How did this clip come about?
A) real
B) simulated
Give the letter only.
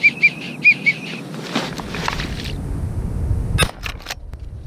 A